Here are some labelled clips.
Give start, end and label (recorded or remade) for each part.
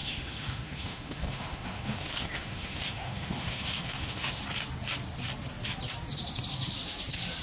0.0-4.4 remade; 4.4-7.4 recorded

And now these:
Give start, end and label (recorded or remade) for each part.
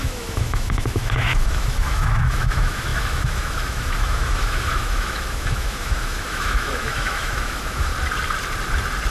0.0-7.9 remade; 7.9-9.1 recorded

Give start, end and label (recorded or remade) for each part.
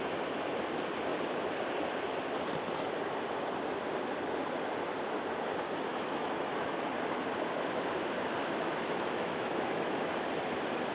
0.0-5.9 recorded; 5.9-6.9 remade; 6.9-8.4 recorded; 8.4-10.1 remade; 10.1-10.9 recorded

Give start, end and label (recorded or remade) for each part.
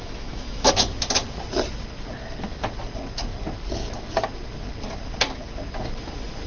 0.0-0.7 remade; 0.7-6.5 recorded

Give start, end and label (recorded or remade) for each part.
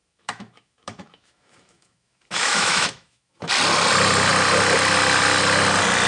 0.0-3.5 remade; 3.5-6.1 recorded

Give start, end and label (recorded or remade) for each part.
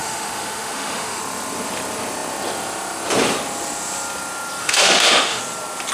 0.0-1.2 remade; 1.2-4.6 recorded; 4.6-5.4 remade; 5.4-5.9 recorded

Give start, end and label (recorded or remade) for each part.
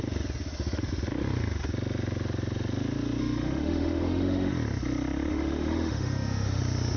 0.0-3.2 recorded; 3.2-4.5 remade; 4.5-5.3 recorded; 5.3-6.6 remade; 6.6-7.0 recorded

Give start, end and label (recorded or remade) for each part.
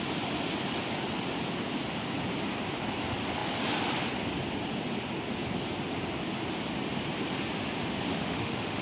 0.0-8.1 recorded; 8.1-8.8 remade